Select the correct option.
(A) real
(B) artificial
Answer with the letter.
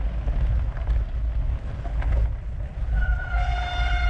A